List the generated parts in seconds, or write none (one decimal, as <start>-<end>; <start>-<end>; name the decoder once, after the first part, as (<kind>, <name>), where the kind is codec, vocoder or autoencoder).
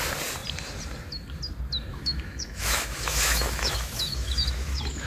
1.9-5.1 (autoencoder, DAC-VAE)